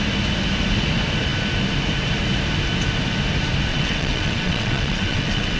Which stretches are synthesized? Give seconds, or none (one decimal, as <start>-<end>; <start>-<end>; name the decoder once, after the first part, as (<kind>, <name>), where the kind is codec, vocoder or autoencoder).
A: 3.7-5.6 (vocoder, WaveNeXt)